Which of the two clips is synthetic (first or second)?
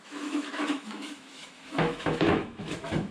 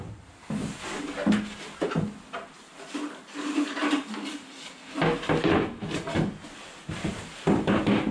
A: first